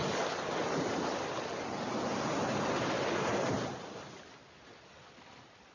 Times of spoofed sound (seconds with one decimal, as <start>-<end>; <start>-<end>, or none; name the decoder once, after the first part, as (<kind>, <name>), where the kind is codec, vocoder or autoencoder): none